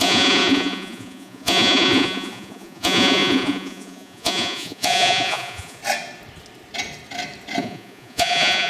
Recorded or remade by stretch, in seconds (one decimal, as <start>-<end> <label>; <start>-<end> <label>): 0.0-5.8 remade; 5.8-7.6 recorded; 7.6-8.7 remade